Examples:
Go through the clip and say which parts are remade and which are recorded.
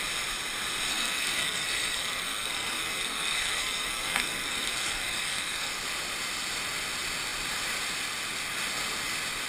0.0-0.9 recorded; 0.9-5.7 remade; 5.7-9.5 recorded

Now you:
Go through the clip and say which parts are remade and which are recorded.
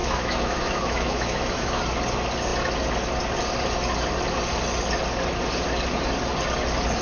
0.0-1.8 remade; 1.8-7.0 recorded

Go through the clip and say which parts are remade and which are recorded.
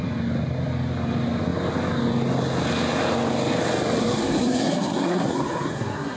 0.0-4.0 recorded; 4.0-6.2 remade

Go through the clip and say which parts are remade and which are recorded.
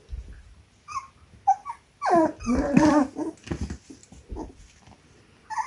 0.0-1.6 recorded; 1.6-3.0 remade; 3.0-5.7 recorded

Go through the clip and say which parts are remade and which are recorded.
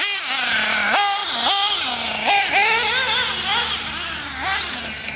0.0-5.2 recorded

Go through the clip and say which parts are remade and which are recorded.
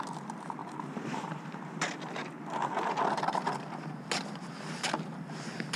0.0-0.6 recorded; 0.6-1.5 remade; 1.5-5.8 recorded